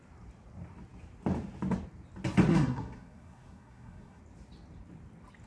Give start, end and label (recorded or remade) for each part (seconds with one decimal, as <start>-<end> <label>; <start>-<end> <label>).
0.0-2.5 recorded; 2.5-4.2 remade; 4.2-5.5 recorded